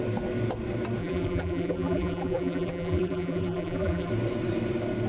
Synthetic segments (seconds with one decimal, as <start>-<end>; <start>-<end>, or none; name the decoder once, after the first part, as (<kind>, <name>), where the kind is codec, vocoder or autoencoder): 1.0-4.1 (vocoder, BigVGAN v2)